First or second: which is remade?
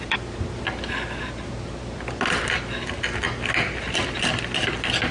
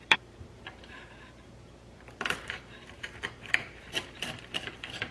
second